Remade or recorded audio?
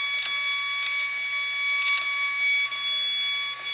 recorded